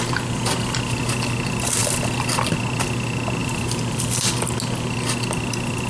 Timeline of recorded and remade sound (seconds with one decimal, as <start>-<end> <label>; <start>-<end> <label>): 0.0-3.4 recorded; 3.4-4.3 remade; 4.3-5.9 recorded